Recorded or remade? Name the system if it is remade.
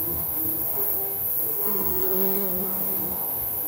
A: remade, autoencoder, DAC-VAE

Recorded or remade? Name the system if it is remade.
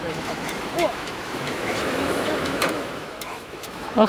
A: remade, autoencoder, DAC-VAE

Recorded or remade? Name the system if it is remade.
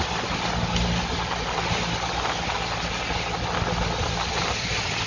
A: recorded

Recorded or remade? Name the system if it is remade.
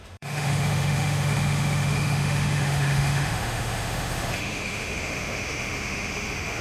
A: remade, autoencoder, DAC-VAE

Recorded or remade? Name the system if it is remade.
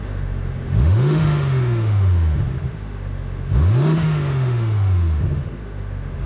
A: remade, autoencoder, DAC-VAE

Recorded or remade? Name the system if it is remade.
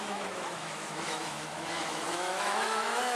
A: remade, autoencoder, DAC-VAE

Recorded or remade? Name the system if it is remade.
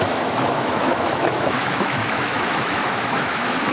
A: remade, autoencoder, DAC-VAE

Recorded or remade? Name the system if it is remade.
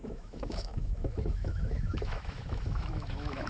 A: remade, autoencoder, DAC-VAE